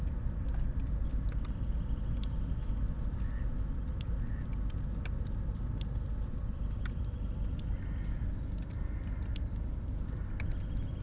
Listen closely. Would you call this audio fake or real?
real